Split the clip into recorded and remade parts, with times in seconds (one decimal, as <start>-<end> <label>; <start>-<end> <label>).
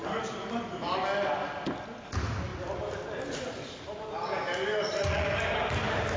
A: 0.0-5.0 recorded; 5.0-5.5 remade; 5.5-6.2 recorded